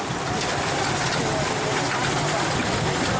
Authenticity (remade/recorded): recorded